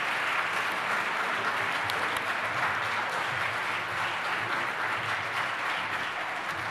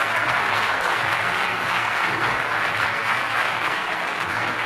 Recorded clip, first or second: first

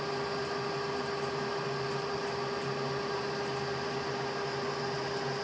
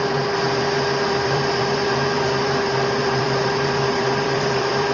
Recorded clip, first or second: first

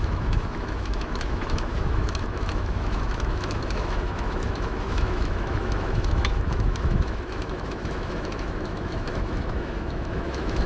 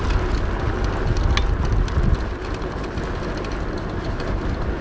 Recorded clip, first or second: second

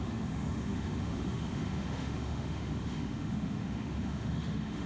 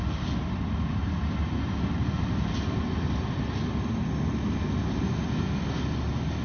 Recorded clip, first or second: second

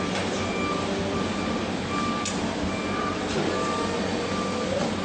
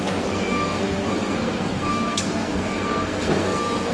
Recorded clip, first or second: first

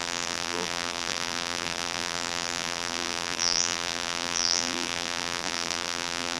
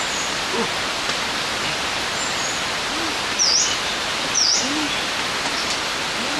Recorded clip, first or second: second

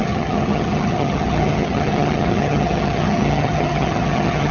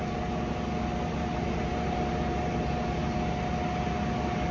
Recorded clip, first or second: second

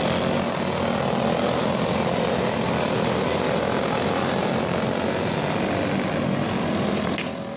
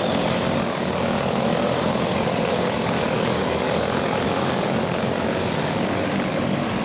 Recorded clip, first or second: first